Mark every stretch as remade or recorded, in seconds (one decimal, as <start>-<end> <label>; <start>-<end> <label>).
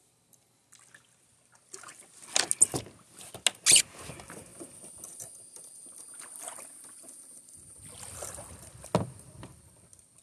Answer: 0.0-1.3 recorded; 1.3-2.5 remade; 2.5-10.2 recorded